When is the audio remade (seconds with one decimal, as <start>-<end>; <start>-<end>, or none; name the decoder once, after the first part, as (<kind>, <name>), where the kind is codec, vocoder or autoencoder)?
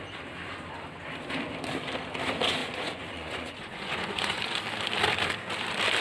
2.6-4.6 (vocoder, Vocos)